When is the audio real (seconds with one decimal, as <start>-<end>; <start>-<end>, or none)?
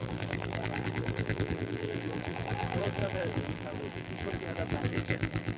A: none